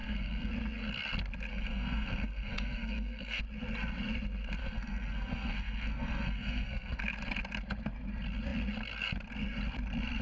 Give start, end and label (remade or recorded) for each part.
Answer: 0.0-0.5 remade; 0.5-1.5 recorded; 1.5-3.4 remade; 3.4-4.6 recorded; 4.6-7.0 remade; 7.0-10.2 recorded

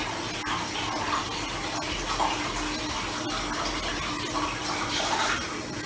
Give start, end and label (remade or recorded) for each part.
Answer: 0.0-5.9 recorded

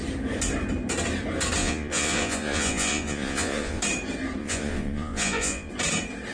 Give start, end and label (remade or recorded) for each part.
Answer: 0.0-1.6 recorded; 1.6-3.8 remade; 3.8-4.4 recorded; 4.4-5.7 remade; 5.7-6.3 recorded

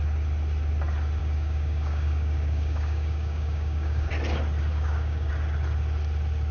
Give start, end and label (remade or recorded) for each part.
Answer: 0.0-1.2 recorded; 1.2-4.1 remade; 4.1-4.7 recorded; 4.7-5.3 remade; 5.3-6.5 recorded

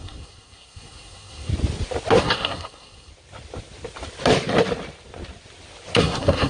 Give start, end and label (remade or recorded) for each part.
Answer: 0.0-1.5 remade; 1.5-2.2 recorded; 2.2-3.1 remade; 3.1-6.0 recorded; 6.0-6.5 remade

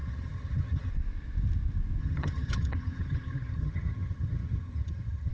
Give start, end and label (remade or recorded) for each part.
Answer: 0.0-0.9 remade; 0.9-2.0 recorded; 2.0-5.3 remade

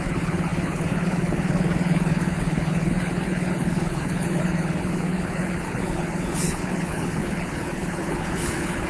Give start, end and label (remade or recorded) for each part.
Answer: 0.0-8.9 remade